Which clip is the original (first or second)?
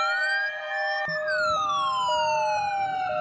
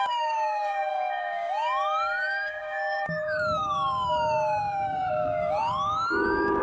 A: first